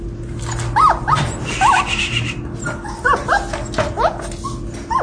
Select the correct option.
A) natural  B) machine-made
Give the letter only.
A